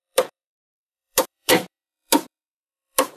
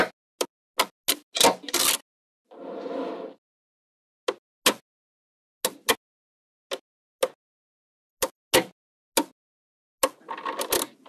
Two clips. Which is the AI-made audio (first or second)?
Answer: first